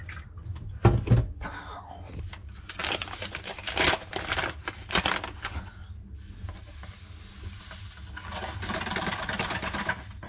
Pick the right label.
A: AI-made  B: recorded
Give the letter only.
B